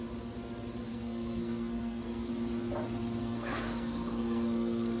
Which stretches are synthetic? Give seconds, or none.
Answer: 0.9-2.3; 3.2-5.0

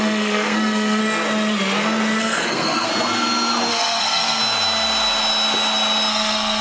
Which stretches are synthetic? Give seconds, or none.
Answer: 0.0-1.0; 2.2-2.9; 3.7-4.4; 6.1-6.6

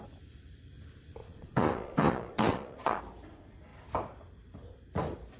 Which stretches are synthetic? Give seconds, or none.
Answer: 1.2-3.0